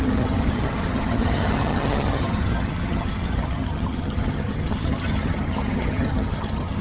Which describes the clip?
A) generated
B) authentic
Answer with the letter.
A